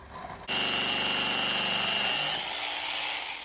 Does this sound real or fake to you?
real